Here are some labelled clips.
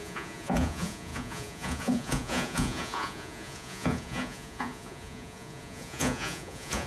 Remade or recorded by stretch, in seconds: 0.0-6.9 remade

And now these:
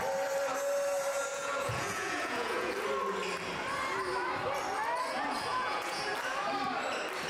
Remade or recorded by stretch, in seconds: 0.0-1.3 recorded; 1.3-2.7 remade; 2.7-5.5 recorded; 5.5-6.0 remade; 6.0-7.3 recorded

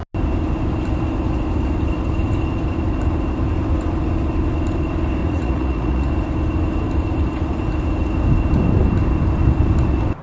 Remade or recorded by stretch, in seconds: 0.0-5.2 recorded; 5.2-6.1 remade; 6.1-10.2 recorded

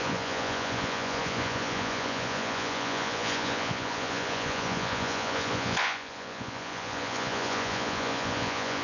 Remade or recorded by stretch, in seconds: 0.0-8.8 remade

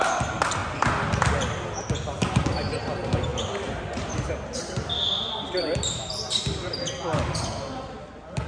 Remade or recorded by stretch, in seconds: 0.0-8.5 recorded

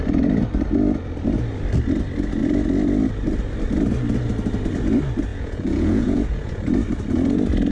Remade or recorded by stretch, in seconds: 0.0-5.3 recorded; 5.3-6.6 remade; 6.6-7.7 recorded

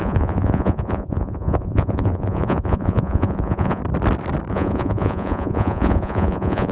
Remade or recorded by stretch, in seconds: 0.0-3.8 remade; 3.8-4.5 recorded; 4.5-6.7 remade

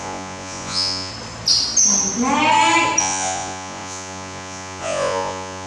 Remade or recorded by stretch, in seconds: 0.0-1.1 remade; 1.1-3.0 recorded; 3.0-5.7 remade